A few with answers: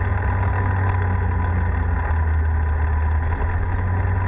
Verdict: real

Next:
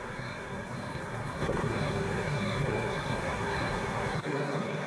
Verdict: fake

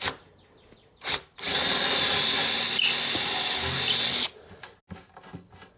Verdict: real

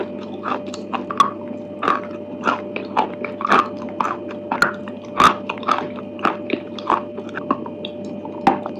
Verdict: real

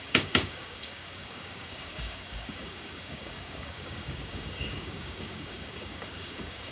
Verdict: fake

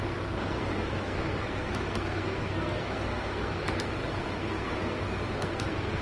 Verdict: fake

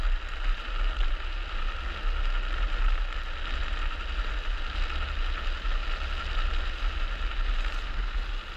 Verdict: real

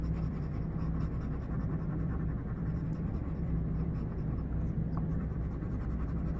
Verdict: fake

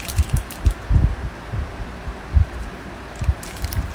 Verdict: fake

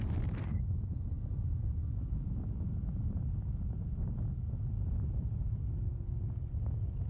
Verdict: real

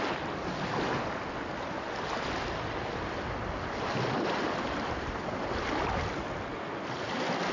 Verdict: real